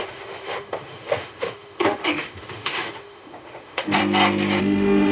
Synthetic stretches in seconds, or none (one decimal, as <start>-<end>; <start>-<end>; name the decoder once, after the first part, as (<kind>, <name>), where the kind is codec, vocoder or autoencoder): 0.0-4.0 (autoencoder, DAC-VAE); 4.6-5.1